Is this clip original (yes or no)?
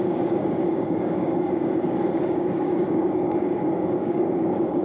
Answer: no